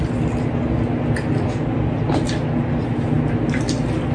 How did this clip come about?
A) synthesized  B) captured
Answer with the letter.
B